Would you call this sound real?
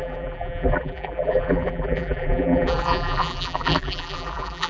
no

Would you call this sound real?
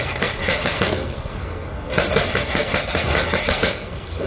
no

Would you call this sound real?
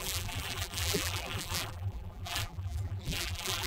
no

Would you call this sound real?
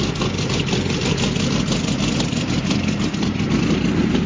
yes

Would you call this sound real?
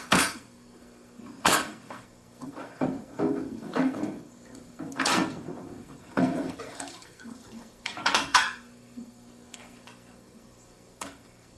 no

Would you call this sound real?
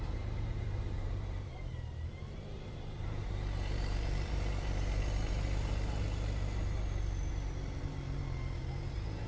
no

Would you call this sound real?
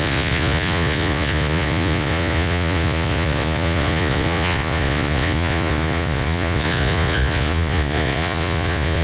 no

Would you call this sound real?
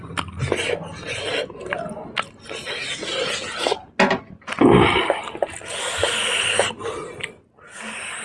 yes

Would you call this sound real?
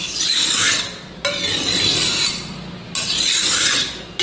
yes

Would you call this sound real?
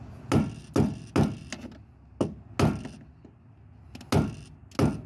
yes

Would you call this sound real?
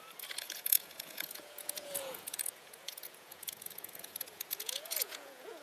no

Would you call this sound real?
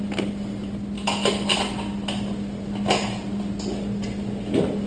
yes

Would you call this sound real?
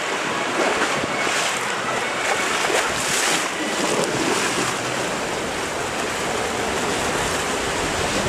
yes